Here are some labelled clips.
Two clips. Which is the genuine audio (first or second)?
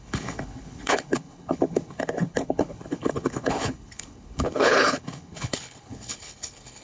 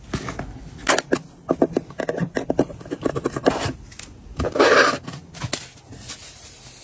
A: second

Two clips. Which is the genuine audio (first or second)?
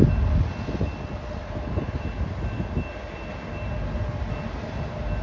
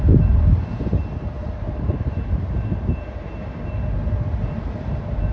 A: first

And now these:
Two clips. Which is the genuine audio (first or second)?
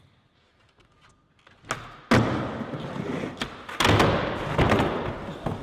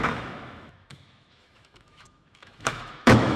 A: first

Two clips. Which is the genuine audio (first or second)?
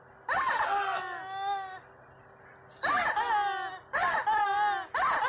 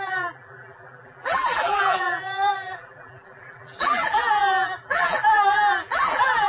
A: first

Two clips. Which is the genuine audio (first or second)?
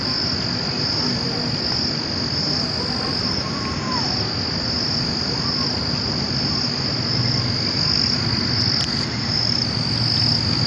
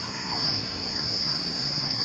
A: first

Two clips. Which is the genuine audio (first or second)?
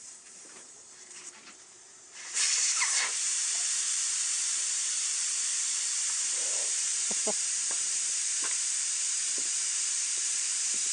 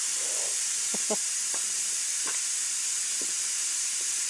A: second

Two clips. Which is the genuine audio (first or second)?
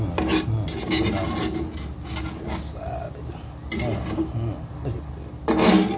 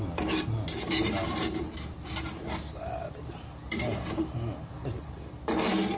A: first